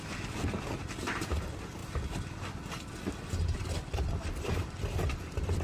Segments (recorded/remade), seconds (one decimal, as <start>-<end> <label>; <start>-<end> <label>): 0.0-5.6 recorded